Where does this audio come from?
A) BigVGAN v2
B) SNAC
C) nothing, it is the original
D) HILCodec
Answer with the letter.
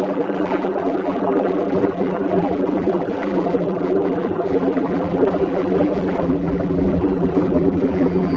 A